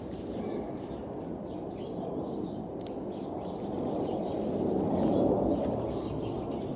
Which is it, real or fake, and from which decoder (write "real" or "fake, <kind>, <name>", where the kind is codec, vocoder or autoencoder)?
real